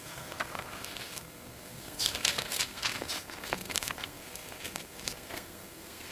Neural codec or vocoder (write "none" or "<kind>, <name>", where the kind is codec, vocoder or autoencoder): codec, SNAC